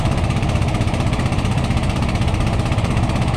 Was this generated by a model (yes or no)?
yes